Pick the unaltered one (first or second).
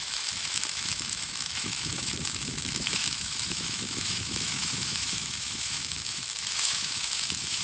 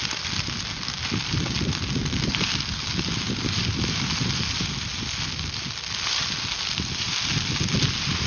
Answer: second